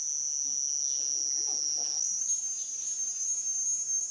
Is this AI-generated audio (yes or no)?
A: no